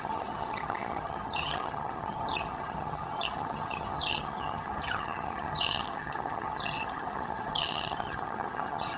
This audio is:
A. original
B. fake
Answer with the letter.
B